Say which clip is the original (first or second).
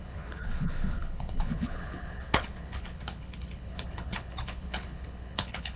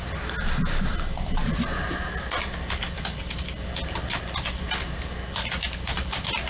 second